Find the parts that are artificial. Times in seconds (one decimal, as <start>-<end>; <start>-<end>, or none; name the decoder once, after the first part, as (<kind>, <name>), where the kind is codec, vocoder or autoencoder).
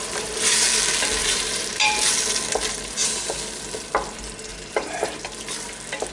1.2-2.1 (vocoder, BigVGAN v2); 4.5-5.2